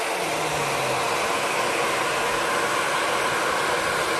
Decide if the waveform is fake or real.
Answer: real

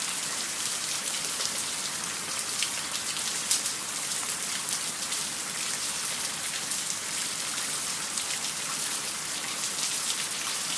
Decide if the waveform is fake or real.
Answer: real